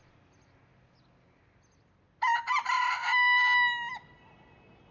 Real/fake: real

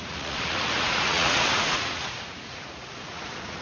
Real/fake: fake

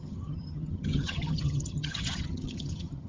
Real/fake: fake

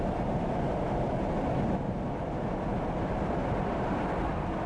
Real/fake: real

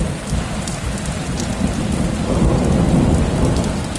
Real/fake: real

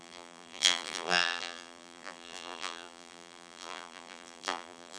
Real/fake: fake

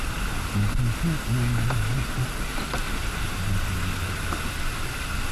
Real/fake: real